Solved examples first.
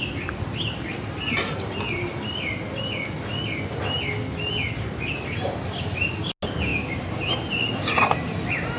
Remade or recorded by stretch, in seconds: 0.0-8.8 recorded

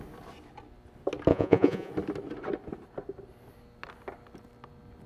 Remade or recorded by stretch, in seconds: 0.0-1.3 recorded; 1.3-1.9 remade; 1.9-5.1 recorded

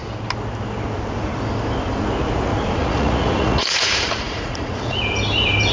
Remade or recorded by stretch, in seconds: 0.0-2.5 recorded; 2.5-5.0 remade; 5.0-5.7 recorded

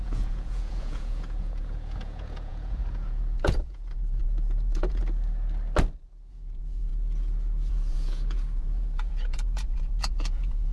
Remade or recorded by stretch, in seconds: 0.0-5.0 remade; 5.0-6.3 recorded; 6.3-6.9 remade; 6.9-7.7 recorded; 7.7-10.7 remade